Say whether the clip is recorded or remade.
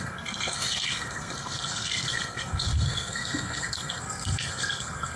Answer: remade